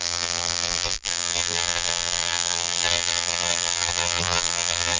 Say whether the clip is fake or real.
fake